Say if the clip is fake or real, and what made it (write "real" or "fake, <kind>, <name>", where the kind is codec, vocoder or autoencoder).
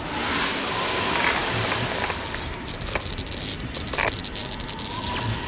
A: real